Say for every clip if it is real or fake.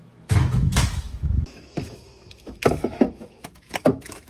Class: fake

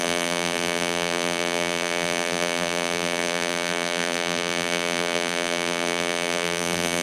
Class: fake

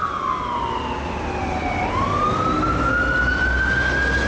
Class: real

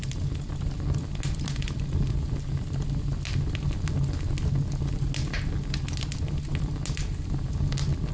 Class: real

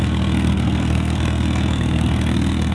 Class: fake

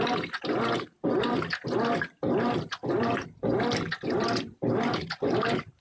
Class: real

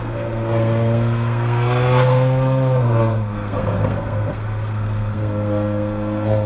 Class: fake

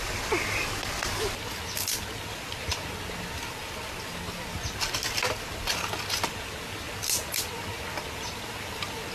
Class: real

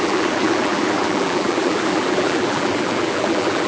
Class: fake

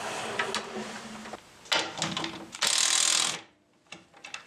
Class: real